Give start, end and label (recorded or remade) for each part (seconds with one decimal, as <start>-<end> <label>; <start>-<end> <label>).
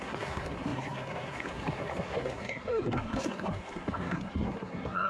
0.0-5.1 remade